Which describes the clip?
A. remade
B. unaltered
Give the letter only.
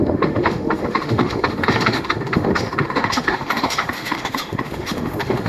A